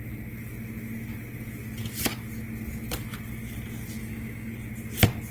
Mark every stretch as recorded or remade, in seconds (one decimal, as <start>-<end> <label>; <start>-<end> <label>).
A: 0.0-4.0 recorded; 4.0-4.5 remade; 4.5-5.3 recorded